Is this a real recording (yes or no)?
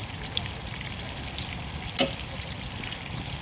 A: yes